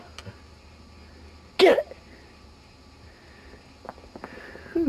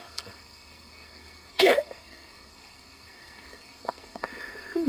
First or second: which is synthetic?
second